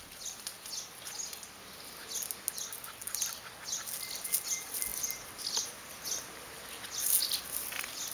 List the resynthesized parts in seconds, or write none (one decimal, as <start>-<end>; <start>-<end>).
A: none